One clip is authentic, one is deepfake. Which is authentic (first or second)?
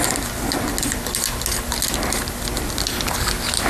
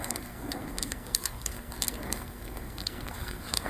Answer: first